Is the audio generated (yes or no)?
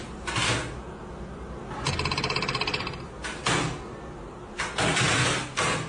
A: no